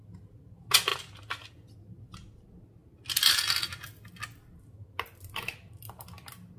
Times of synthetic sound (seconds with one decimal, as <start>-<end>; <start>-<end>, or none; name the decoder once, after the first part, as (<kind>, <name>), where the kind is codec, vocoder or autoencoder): none